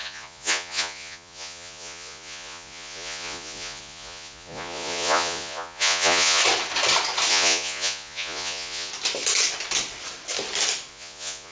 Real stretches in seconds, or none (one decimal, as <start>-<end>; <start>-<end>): 6.4-7.3; 8.9-10.9